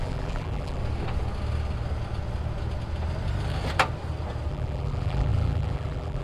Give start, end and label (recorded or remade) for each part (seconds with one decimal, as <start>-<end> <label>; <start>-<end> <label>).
0.0-0.8 remade; 0.8-4.5 recorded; 4.5-6.2 remade

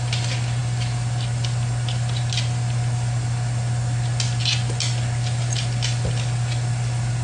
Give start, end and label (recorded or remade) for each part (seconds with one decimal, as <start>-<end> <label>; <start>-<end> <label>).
0.0-7.2 recorded

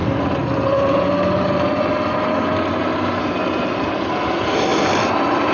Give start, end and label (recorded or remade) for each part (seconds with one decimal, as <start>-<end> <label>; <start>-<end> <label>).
0.0-5.5 recorded

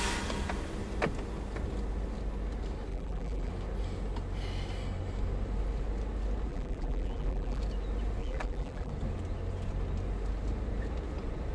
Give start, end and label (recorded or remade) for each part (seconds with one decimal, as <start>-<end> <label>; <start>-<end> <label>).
0.0-2.9 recorded; 2.9-3.5 remade; 3.5-6.5 recorded; 6.5-7.6 remade; 7.6-8.2 recorded; 8.2-8.9 remade; 8.9-11.5 recorded

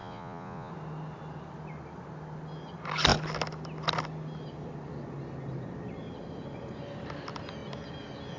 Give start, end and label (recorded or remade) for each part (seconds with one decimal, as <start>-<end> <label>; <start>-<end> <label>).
0.0-0.7 remade; 0.7-8.4 recorded